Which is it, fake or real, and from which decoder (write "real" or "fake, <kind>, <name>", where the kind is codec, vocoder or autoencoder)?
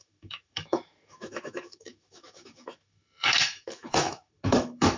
fake, autoencoder, DAC-VAE